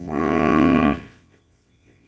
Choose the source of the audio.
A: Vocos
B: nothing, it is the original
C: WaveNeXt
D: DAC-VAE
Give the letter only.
C